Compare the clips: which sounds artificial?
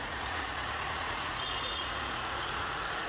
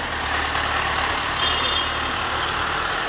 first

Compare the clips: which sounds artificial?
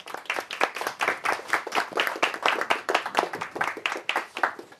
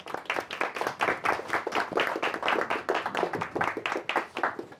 first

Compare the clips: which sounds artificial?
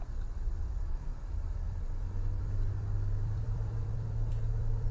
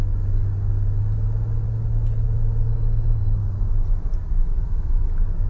first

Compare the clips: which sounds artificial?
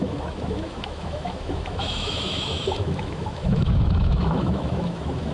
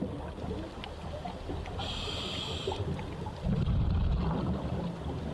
first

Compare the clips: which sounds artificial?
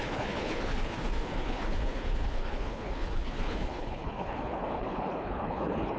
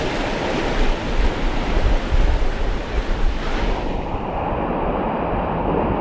first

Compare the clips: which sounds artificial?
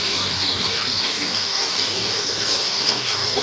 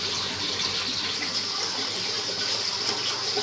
first